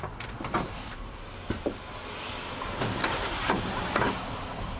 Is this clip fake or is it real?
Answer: fake